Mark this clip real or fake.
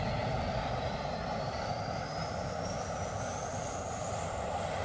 real